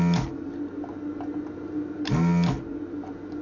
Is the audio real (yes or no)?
yes